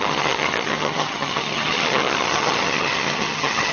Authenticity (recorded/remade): remade